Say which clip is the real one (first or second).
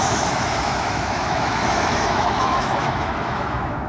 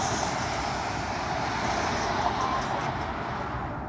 second